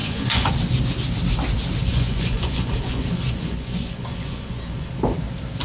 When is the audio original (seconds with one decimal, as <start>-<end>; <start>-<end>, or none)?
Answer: 0.5-1.9; 4.9-5.6